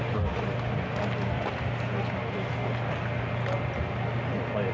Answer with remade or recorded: recorded